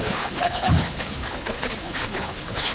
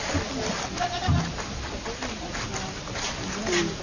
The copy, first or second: first